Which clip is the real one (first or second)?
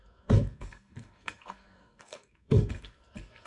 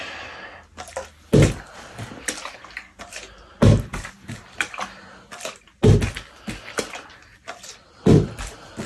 second